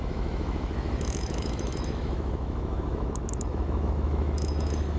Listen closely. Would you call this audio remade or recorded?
remade